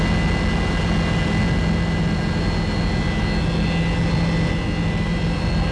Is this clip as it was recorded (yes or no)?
yes